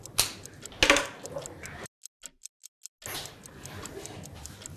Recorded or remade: recorded